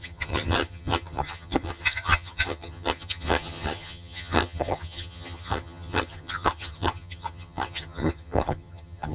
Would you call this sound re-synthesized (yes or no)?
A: yes